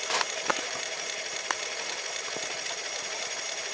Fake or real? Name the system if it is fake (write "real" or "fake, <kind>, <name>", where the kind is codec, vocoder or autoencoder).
fake, vocoder, BigVGAN v2